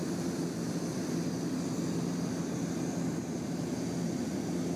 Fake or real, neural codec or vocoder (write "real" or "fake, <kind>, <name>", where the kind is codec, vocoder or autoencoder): real